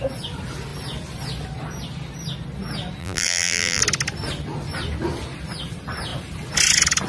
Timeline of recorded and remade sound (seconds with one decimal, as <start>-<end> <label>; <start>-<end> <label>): 0.0-3.0 recorded; 3.0-3.8 remade; 3.8-7.1 recorded